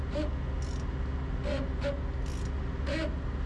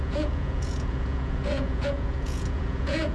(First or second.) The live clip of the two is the first